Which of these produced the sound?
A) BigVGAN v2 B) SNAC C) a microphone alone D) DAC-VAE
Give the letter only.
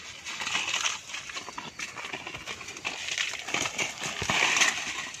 C